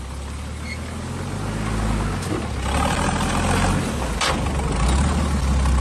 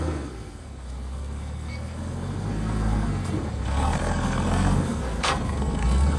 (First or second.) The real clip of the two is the first